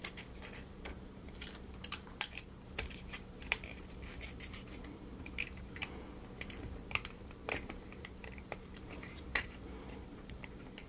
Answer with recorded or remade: remade